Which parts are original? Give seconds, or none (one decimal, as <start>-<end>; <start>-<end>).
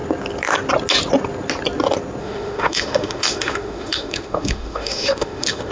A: 0.0-2.2